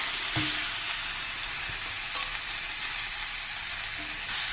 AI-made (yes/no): no